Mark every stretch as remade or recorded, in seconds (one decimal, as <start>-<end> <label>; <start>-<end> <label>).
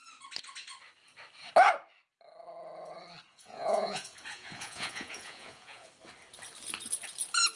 0.0-3.3 recorded; 3.3-5.9 remade; 5.9-7.6 recorded